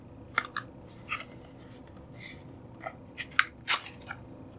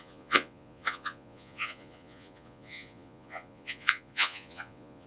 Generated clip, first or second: second